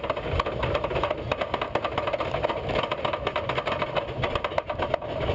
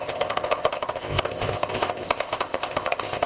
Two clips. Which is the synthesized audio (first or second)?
second